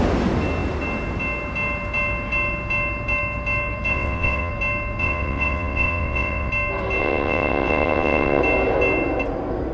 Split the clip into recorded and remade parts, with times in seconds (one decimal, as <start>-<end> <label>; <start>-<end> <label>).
0.0-3.9 recorded; 3.9-4.5 remade; 4.5-5.0 recorded; 5.0-6.5 remade; 6.5-7.0 recorded; 7.0-8.4 remade; 8.4-9.7 recorded

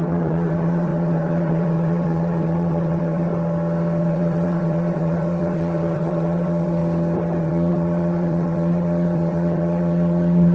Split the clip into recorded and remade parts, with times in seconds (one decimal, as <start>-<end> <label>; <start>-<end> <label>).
0.0-3.3 remade; 3.3-4.0 recorded; 4.0-6.8 remade; 6.8-7.4 recorded; 7.4-10.5 remade